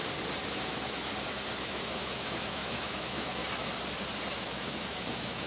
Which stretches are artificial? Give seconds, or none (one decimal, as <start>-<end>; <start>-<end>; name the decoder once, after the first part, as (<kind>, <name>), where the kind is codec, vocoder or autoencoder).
0.5-1.1 (autoencoder, DAC-VAE); 1.6-3.4; 4.3-5.5